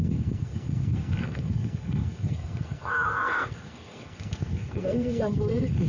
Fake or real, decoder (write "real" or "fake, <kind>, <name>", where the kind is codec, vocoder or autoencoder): fake, codec, SNAC